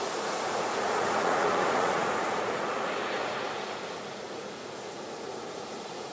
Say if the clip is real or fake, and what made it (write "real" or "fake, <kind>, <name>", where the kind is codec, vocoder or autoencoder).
fake, vocoder, Vocos